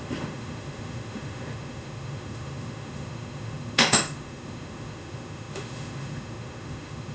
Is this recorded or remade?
remade